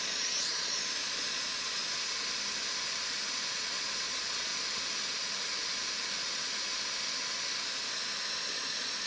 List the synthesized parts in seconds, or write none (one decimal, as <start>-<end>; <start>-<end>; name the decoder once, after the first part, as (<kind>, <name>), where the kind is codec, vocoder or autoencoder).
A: 0.0-1.8 (vocoder, Vocos); 3.5-4.5; 8.3-9.1

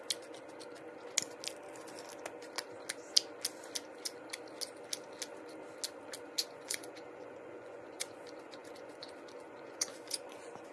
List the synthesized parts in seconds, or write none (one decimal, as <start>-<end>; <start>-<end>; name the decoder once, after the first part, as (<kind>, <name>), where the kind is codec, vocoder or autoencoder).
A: 6.4-10.7 (vocoder, Vocos)

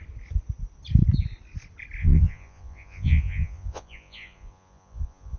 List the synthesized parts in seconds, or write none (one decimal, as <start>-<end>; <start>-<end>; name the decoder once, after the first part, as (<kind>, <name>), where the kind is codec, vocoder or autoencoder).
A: 2.0-5.4 (vocoder, Vocos)

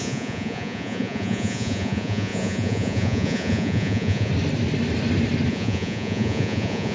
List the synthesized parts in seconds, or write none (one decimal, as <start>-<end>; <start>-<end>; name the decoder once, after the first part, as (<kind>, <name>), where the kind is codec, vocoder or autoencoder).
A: 0.0-4.3 (vocoder, Vocos); 5.5-6.9

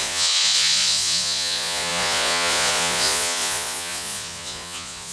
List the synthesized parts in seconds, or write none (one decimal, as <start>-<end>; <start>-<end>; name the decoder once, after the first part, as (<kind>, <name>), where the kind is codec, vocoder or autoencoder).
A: 0.0-5.1 (vocoder, Vocos)

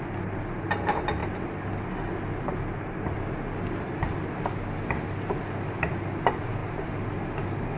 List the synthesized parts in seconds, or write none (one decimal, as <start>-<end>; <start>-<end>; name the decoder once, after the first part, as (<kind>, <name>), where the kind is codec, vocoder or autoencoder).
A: none